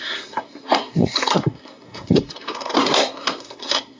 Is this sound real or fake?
fake